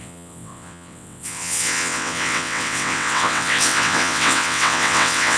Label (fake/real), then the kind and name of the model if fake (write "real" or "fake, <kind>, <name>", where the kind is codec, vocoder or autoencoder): fake, vocoder, WaveNeXt